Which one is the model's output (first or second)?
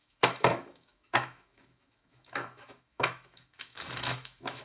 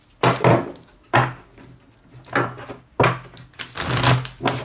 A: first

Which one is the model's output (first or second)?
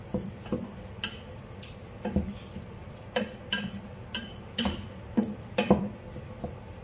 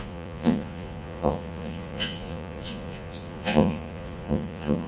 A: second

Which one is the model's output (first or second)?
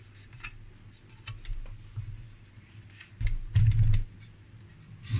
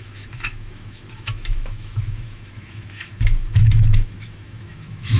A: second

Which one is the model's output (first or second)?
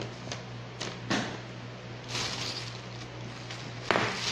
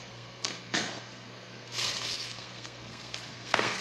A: second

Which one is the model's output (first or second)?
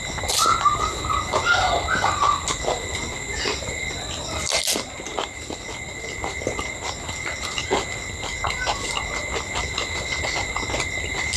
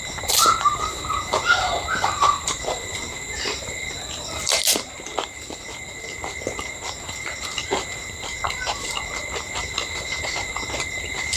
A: second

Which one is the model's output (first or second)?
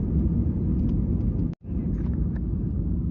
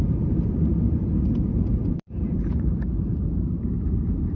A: second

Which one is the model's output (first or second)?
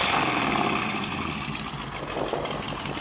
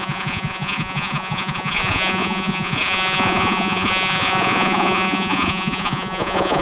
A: second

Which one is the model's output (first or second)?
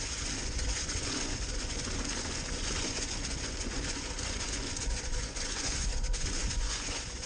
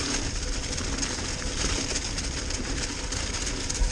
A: first